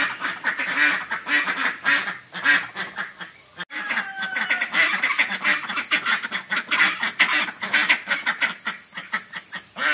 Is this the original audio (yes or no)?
yes